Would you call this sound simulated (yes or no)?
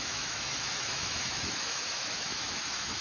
yes